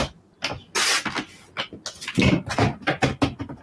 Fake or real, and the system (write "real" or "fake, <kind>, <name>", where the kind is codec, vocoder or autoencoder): real